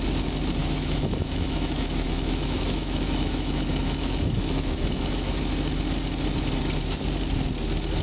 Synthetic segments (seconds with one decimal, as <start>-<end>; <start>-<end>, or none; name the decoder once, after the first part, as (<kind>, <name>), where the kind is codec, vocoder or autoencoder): 0.6-5.4 (autoencoder, DAC-VAE)